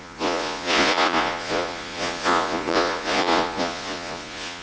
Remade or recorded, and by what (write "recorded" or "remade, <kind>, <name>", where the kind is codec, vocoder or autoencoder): remade, vocoder, Vocos